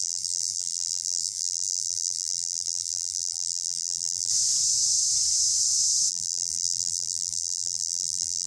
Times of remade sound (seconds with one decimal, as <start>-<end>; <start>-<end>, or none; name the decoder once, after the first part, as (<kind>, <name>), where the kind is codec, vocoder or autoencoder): 0.0-4.3 (vocoder, BigVGAN v2); 6.1-8.5